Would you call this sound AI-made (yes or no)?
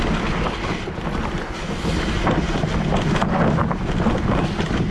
no